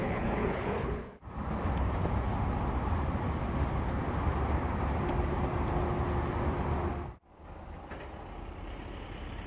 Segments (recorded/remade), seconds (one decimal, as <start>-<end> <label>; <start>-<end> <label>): 0.0-1.2 remade; 1.2-9.5 recorded